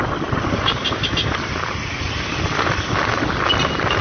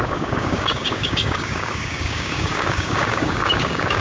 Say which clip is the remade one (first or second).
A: second